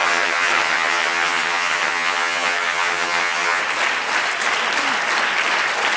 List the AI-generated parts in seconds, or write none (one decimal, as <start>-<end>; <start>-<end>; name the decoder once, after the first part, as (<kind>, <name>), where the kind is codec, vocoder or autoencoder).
0.0-3.6 (vocoder, HiFi-GAN)